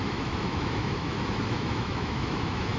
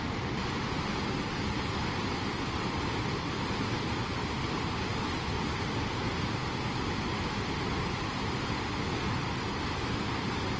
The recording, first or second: second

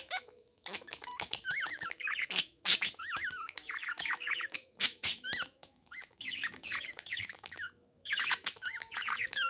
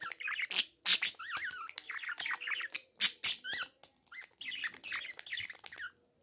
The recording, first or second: second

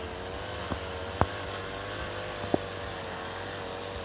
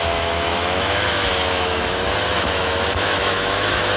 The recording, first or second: first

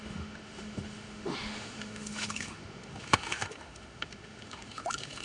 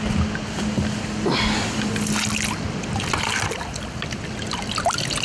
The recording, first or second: second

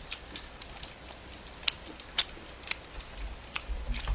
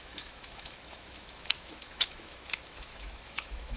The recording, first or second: first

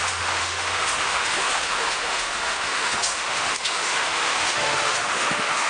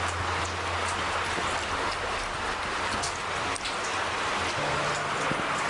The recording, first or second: second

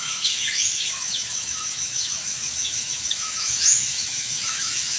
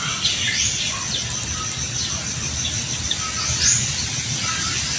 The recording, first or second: second